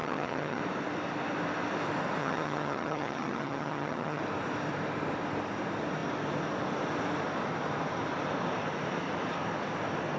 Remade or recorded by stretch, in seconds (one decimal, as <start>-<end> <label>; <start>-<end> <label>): 0.0-0.6 remade; 0.6-2.2 recorded; 2.2-4.2 remade; 4.2-10.2 recorded